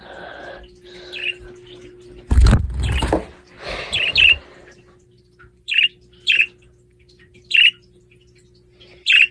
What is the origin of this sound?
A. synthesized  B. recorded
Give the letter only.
B